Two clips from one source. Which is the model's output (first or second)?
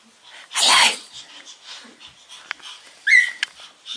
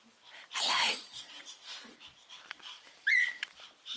second